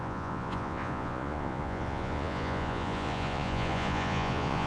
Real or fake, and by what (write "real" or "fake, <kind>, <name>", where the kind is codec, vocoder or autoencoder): fake, vocoder, Vocos